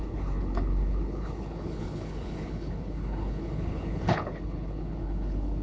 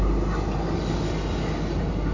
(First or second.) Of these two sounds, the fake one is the first